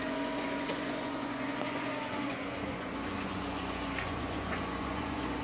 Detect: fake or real fake